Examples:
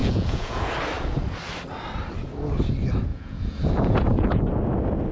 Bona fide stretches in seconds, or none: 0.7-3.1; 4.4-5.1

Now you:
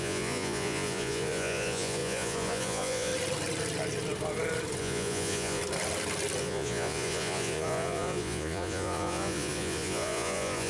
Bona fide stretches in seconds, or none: 3.1-4.8; 5.6-6.4

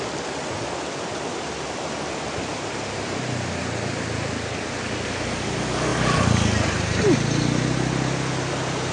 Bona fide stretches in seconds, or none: 0.0-8.9

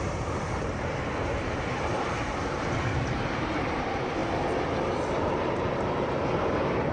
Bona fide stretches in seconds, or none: 4.2-5.1

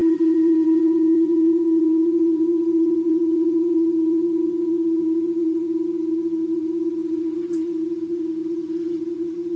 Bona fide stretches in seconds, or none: none

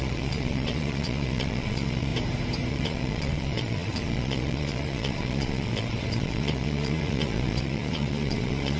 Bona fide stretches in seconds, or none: 2.1-2.7